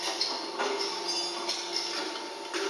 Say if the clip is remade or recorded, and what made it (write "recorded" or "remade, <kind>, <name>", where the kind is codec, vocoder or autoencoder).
recorded